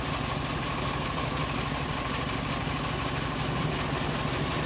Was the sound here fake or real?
real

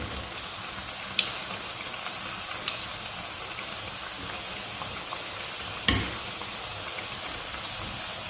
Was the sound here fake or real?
real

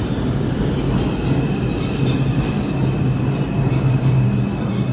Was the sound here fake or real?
real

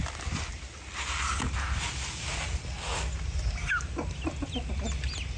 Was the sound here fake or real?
real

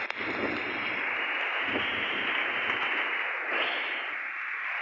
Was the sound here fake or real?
real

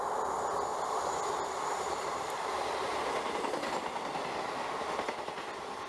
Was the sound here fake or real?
real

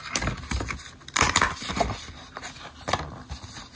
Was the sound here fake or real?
real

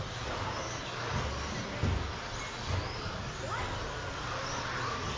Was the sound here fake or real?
real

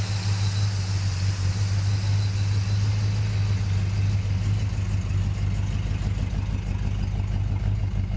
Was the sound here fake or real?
real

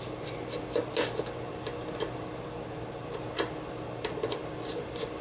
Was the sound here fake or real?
real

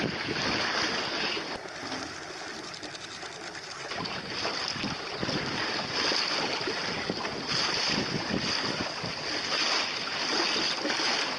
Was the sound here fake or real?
real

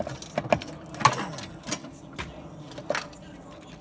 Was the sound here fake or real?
real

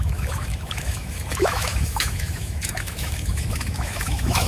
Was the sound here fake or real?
fake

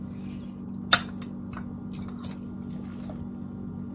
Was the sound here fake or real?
real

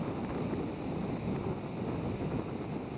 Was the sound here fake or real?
real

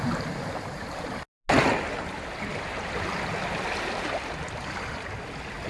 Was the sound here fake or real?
real